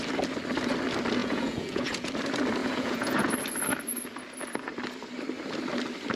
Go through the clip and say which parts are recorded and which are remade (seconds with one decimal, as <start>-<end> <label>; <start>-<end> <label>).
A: 0.0-1.2 recorded; 1.2-2.1 remade; 2.1-2.6 recorded; 2.6-3.3 remade; 3.3-6.2 recorded